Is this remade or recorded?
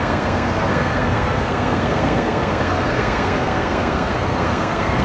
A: remade